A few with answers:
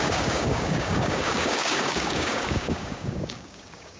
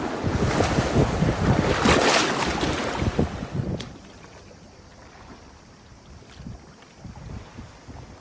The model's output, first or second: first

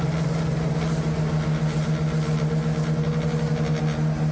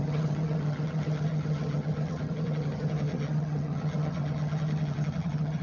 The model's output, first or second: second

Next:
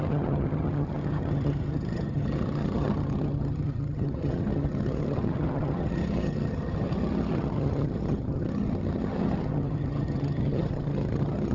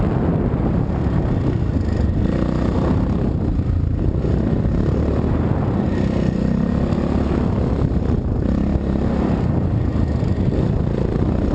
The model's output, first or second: first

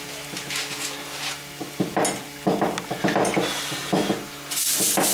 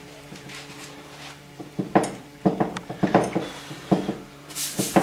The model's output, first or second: second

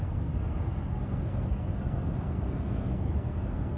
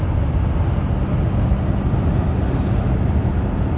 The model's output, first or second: first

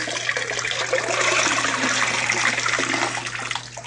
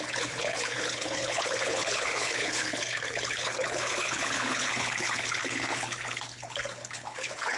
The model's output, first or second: second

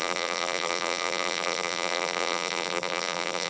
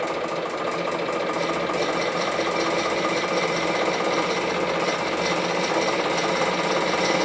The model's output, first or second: first